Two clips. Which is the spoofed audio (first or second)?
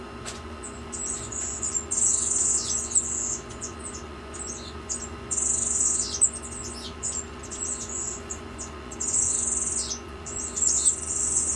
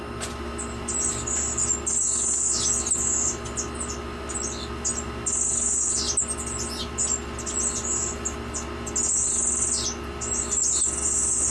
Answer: first